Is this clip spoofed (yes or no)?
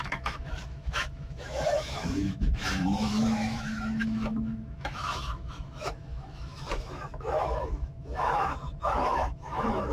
yes